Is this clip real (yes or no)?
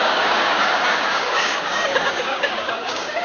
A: no